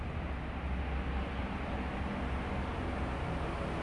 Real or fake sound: real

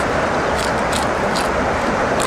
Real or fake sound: fake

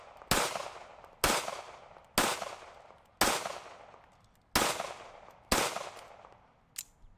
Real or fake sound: real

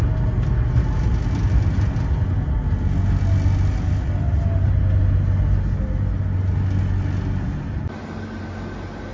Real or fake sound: real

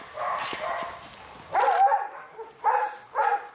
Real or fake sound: real